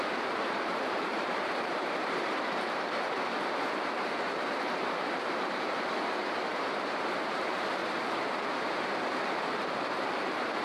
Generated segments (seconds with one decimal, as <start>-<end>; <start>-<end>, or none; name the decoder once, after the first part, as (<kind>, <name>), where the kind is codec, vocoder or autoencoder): 0.0-6.2 (vocoder, BigVGAN v2); 7.2-10.6